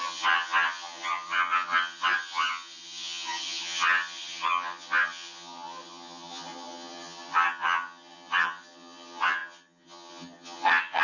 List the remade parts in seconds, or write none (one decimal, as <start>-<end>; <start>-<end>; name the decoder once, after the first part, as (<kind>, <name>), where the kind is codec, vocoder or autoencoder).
0.0-11.0 (vocoder, HiFi-GAN)